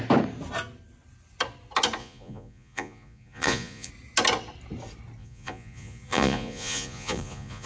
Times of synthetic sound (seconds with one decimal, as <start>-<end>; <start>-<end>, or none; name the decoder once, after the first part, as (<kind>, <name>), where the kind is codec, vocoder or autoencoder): 2.0-3.9 (vocoder, Vocos); 5.2-7.7

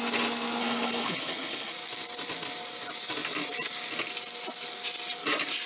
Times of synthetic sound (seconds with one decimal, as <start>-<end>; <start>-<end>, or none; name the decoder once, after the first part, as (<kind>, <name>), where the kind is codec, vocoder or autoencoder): 0.6-1.7 (codec, HILCodec)